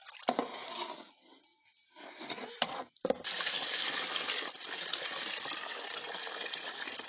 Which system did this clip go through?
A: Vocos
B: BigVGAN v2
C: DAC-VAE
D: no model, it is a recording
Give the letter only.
D